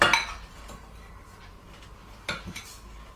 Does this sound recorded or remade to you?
recorded